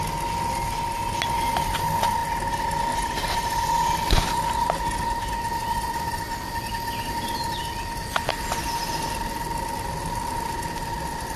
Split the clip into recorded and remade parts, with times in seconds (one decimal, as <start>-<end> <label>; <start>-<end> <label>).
0.0-11.4 recorded